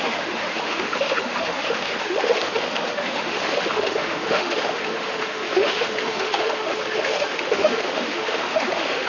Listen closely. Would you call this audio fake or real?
fake